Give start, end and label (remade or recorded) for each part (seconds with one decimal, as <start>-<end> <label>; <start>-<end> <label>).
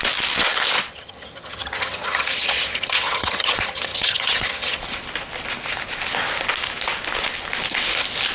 0.0-0.9 recorded; 0.9-4.8 remade; 4.8-8.3 recorded